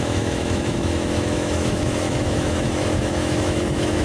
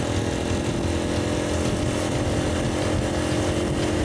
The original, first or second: second